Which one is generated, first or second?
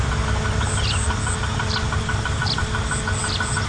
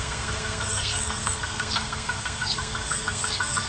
second